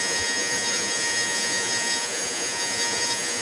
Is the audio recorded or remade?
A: remade